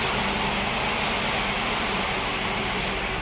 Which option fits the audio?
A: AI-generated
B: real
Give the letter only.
B